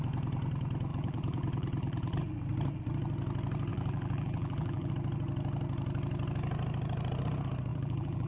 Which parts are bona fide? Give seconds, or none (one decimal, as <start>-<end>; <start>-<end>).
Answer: 0.0-0.9; 2.2-3.7; 4.9-7.7